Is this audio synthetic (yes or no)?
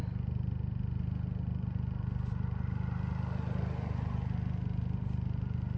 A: no